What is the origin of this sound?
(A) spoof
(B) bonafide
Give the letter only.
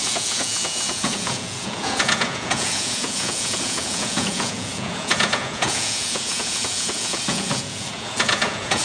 A